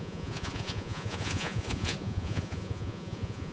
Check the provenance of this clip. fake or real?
fake